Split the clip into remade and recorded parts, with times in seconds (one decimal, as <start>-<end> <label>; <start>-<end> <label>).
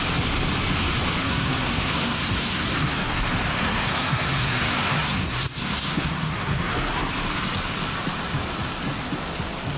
0.0-1.2 recorded; 1.2-3.1 remade; 3.1-3.6 recorded; 3.6-7.1 remade; 7.1-9.8 recorded